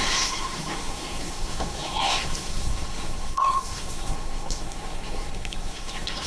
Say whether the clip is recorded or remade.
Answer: remade